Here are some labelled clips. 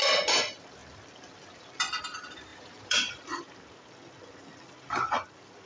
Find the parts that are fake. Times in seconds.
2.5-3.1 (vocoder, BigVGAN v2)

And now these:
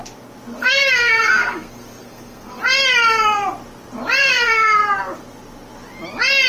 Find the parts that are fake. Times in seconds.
0.6-2.6 (codec, SNAC); 4.2-4.8

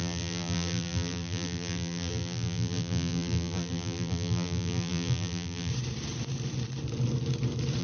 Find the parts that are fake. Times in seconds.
0.0-5.7 (vocoder, BigVGAN v2)